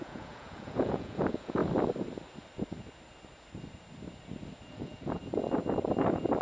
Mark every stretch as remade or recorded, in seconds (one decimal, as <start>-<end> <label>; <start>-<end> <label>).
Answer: 0.0-1.6 remade; 1.6-4.7 recorded; 4.7-5.2 remade; 5.2-6.4 recorded